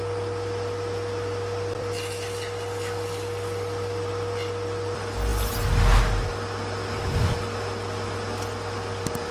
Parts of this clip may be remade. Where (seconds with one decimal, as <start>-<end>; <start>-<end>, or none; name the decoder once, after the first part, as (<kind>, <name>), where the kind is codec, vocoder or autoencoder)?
none